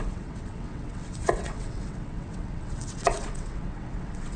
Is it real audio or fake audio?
fake